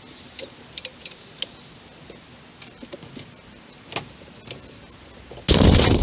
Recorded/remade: recorded